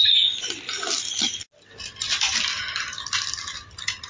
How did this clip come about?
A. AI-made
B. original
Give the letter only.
B